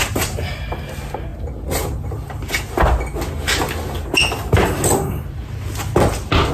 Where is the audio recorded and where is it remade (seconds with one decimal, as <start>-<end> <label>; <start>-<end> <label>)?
0.0-6.5 recorded